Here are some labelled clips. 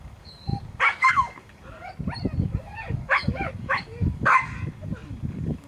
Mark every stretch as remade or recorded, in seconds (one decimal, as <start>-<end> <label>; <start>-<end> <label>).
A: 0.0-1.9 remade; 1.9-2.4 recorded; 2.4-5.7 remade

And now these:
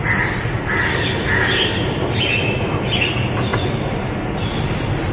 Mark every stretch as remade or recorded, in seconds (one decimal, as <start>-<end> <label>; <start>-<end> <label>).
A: 0.0-3.5 recorded; 3.5-4.3 remade; 4.3-5.1 recorded

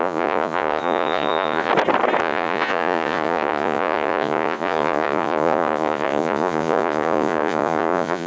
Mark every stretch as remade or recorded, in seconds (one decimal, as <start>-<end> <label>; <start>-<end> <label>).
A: 0.0-1.7 remade; 1.7-2.2 recorded; 2.2-8.3 remade